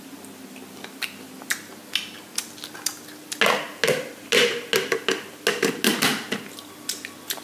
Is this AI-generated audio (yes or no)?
no